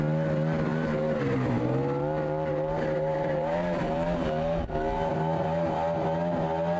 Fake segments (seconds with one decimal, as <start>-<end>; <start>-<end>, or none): 0.7-1.6; 2.5-5.1